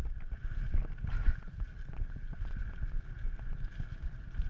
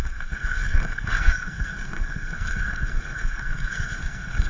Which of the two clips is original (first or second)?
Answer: first